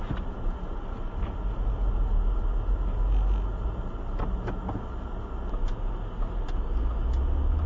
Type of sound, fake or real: real